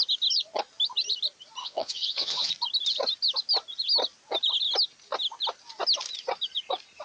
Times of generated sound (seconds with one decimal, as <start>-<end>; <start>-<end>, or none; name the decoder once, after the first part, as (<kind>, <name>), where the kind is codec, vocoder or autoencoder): 1.6-2.5 (vocoder, WaveNeXt)

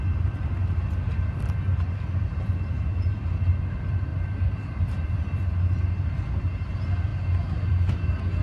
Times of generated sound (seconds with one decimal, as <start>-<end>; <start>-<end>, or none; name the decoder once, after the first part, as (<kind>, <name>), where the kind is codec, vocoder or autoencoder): none

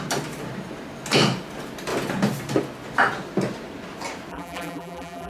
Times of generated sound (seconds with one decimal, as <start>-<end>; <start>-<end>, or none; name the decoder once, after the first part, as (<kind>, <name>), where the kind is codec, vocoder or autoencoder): 4.3-5.3 (vocoder, BigVGAN v2)

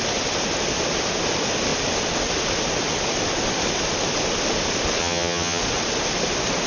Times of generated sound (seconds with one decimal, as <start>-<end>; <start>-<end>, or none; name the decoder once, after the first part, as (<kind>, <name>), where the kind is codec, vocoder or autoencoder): 5.0-5.6 (vocoder, HiFi-GAN)

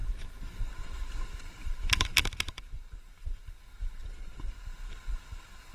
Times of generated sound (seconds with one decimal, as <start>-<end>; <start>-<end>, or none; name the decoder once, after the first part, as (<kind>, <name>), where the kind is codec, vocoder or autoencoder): 1.6-4.0 (vocoder, BigVGAN v2)

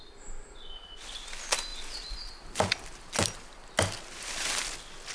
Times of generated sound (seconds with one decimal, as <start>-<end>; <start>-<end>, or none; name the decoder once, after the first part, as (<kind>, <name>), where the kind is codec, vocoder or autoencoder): none

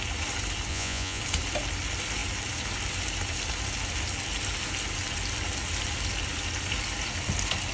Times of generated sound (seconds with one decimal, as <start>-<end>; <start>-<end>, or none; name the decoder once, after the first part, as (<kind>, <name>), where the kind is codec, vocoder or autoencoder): 0.7-1.2 (vocoder, Vocos)